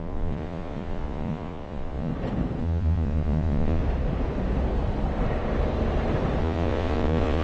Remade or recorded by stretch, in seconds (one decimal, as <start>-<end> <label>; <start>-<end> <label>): 0.0-2.1 remade; 2.1-2.6 recorded; 2.6-3.8 remade; 3.8-6.4 recorded; 6.4-7.4 remade